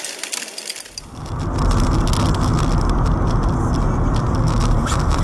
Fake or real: real